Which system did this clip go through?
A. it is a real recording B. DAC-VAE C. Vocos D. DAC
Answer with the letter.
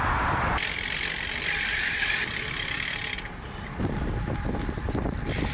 A